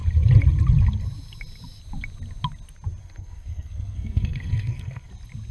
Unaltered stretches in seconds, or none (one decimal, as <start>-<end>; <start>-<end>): 0.0-3.0; 5.1-5.5